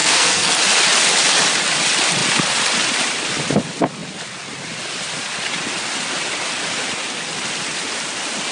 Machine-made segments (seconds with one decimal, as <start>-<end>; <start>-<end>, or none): 0.0-0.6